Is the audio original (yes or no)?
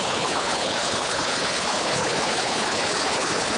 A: no